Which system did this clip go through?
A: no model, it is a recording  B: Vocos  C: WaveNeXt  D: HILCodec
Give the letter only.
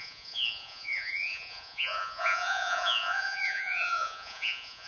B